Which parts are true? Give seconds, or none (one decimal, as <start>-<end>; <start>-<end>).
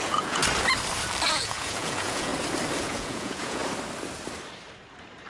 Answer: 0.4-1.3; 2.3-2.8; 3.6-5.3